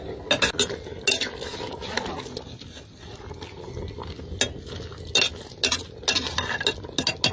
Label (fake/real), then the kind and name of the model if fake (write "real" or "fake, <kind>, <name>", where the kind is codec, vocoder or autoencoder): real